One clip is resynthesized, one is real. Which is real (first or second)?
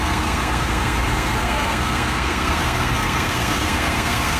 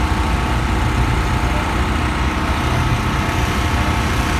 second